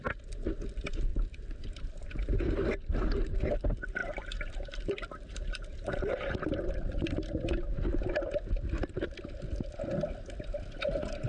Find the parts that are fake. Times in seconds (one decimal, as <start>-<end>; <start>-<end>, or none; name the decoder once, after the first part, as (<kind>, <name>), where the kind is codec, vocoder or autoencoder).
1.1-2.3 (vocoder, BigVGAN v2); 4.0-7.0